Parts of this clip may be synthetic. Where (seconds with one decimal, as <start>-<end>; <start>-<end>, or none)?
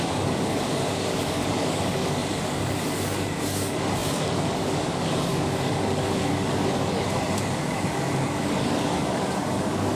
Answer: 0.0-10.0